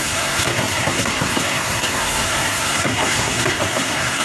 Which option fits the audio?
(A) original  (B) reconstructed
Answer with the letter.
B